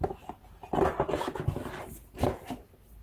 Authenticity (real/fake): real